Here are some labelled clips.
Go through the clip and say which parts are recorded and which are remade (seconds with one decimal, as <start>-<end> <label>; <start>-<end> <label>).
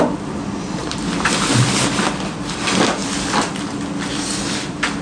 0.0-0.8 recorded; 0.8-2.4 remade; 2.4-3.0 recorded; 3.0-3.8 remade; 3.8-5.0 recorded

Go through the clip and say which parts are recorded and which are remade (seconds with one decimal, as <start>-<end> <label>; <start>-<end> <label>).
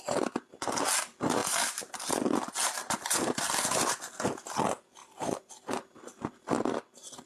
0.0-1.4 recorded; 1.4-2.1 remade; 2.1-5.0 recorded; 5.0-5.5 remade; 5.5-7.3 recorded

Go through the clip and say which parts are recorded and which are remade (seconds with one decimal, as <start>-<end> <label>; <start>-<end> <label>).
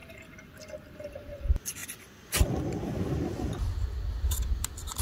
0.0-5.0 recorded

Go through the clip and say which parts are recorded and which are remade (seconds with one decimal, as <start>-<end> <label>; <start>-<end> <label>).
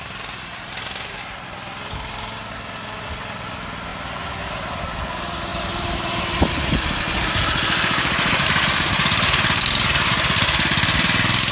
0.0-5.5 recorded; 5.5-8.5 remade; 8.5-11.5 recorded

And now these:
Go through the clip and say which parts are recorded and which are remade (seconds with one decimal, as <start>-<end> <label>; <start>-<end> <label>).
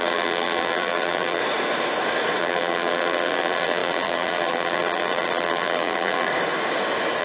0.0-1.4 remade; 1.4-2.4 recorded; 2.4-6.3 remade; 6.3-7.2 recorded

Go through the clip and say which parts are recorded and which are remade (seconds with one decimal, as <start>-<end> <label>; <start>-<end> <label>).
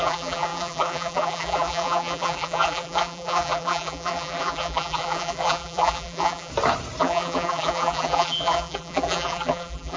0.0-6.5 remade; 6.5-7.0 recorded; 7.0-10.0 remade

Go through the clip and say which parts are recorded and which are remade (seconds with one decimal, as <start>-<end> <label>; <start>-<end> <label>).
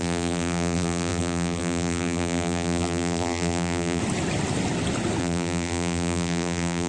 0.0-4.0 remade; 4.0-5.2 recorded; 5.2-6.9 remade